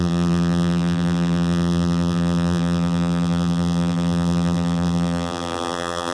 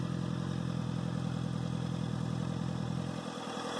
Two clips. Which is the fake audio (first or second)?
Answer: first